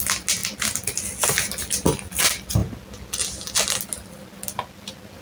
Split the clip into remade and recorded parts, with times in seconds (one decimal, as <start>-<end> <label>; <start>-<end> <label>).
0.0-5.2 recorded